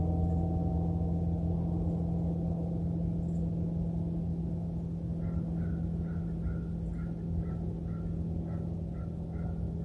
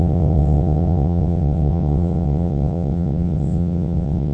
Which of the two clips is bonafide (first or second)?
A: first